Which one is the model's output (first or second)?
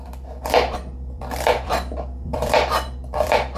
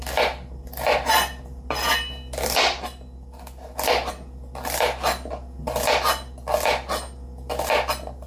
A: first